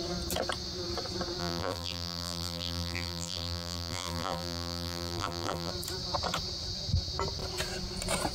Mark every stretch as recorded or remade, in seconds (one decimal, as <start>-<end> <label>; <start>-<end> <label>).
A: 0.0-1.4 recorded; 1.4-5.7 remade; 5.7-8.3 recorded